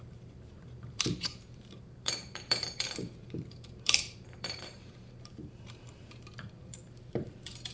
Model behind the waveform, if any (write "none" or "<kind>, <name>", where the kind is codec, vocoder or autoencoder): vocoder, BigVGAN v2